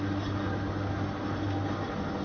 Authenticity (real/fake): real